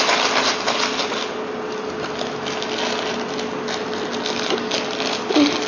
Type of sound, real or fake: real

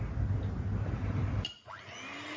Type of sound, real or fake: real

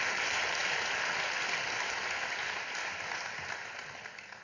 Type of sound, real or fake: real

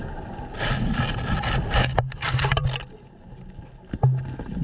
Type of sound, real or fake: real